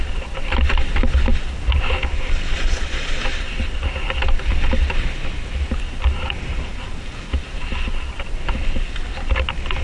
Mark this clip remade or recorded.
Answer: recorded